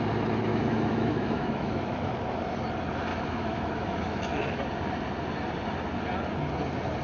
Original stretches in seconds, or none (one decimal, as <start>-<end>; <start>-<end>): 0.0-0.5; 2.1-3.1; 4.6-7.0